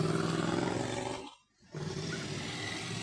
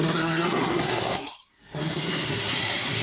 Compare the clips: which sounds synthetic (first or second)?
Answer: second